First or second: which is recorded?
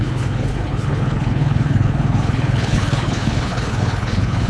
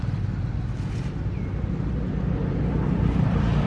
second